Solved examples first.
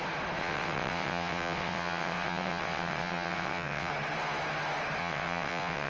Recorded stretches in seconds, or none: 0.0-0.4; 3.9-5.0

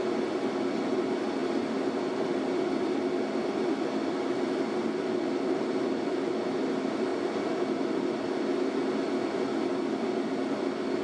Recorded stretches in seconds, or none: 0.0-11.0

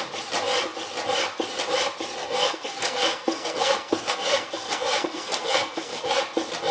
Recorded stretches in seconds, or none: 0.0-2.2; 6.2-6.7

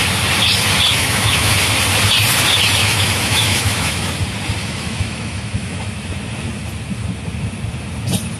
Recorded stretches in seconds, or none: 0.0-0.9; 1.5-2.8; 4.1-4.6; 5.8-8.4

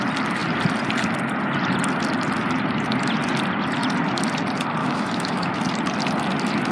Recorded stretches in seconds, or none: 0.0-4.8; 5.6-6.7